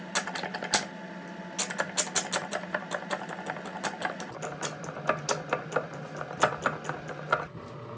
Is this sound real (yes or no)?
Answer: yes